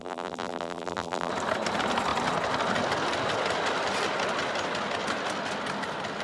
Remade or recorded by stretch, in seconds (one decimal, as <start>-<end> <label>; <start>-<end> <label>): 0.0-1.3 remade; 1.3-6.2 recorded